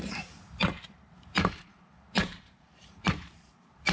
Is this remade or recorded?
remade